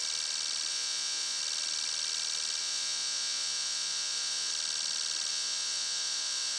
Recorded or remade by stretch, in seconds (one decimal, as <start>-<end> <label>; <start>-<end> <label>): 0.0-0.7 recorded; 0.7-1.4 remade; 1.4-2.6 recorded; 2.6-4.5 remade; 4.5-5.3 recorded; 5.3-6.6 remade